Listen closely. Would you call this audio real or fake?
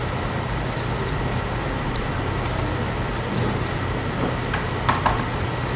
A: real